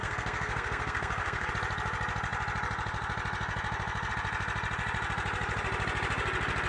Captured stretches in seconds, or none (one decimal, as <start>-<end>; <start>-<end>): 1.5-6.7